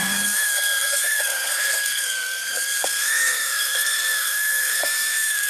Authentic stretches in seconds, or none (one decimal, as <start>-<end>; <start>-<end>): none

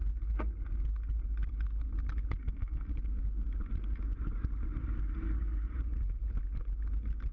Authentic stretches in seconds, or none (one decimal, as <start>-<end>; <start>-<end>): 0.0-2.4; 2.9-7.3

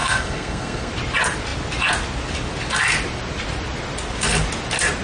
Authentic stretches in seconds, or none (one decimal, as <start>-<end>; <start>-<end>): 0.9-5.0

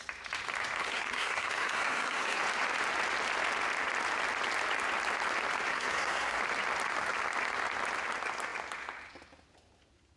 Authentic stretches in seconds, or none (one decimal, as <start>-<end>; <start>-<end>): 0.0-0.8; 2.4-5.7; 6.4-10.2

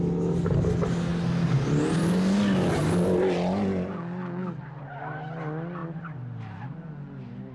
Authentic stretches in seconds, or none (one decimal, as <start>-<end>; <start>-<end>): 0.0-7.5

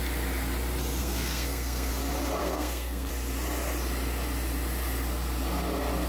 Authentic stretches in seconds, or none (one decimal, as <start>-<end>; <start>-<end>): 0.0-1.0; 1.9-2.4; 3.1-6.1

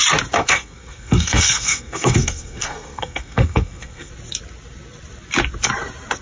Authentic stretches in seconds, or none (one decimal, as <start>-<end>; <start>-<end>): 0.0-0.4; 4.1-6.2

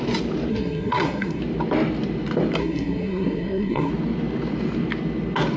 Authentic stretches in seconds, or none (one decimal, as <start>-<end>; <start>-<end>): 0.0-0.5; 1.4-2.6; 3.9-5.6